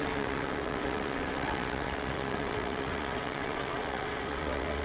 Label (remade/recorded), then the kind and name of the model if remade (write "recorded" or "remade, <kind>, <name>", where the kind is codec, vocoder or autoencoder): remade, vocoder, WaveNeXt